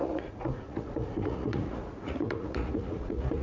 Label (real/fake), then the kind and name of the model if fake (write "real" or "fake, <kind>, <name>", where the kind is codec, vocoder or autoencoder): fake, vocoder, Vocos